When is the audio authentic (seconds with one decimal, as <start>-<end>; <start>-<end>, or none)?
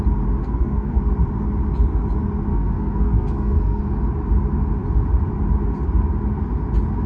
0.0-0.4; 1.0-2.5; 3.8-7.1